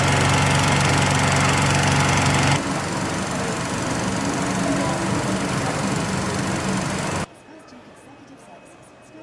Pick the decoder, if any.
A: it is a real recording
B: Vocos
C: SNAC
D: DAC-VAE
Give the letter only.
A